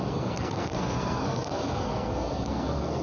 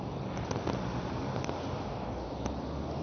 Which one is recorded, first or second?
second